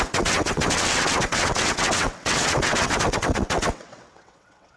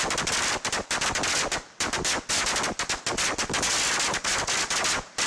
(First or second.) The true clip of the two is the second